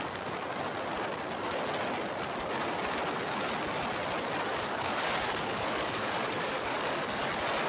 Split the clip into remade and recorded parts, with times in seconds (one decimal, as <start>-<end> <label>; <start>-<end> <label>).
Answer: 0.0-4.5 recorded; 4.5-7.2 remade; 7.2-7.7 recorded